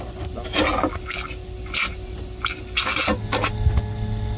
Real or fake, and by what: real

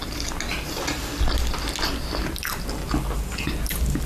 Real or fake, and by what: real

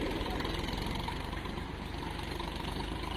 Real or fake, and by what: fake, vocoder, BigVGAN v2